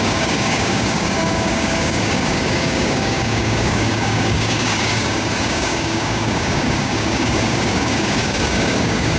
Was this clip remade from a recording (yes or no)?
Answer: yes